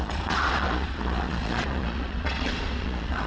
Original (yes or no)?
no